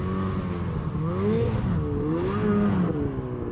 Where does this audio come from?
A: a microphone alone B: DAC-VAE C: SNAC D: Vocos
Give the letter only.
A